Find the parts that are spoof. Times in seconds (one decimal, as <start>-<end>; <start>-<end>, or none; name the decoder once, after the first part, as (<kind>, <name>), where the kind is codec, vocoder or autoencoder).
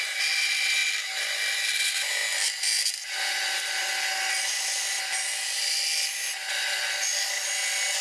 none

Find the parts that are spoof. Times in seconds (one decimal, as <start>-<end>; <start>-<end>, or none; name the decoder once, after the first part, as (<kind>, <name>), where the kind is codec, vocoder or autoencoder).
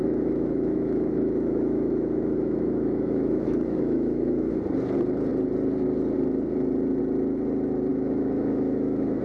0.0-4.5 (autoencoder, DAC-VAE); 7.9-9.2